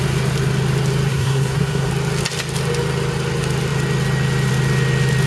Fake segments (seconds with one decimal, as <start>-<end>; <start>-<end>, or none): 1.1-1.9